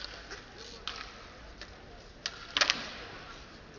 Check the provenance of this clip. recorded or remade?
recorded